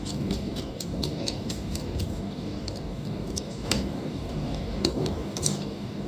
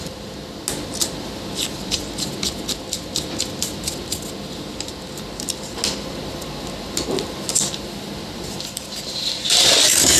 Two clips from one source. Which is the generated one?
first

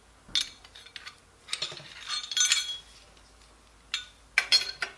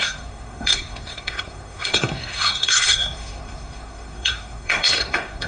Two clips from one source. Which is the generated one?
second